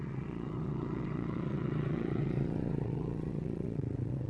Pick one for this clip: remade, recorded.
remade